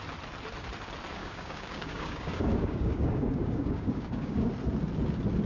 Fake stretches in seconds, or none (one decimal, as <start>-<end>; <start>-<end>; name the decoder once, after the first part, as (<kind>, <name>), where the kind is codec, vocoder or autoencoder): 1.2-4.5 (codec, DAC)